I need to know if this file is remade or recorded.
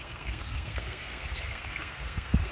remade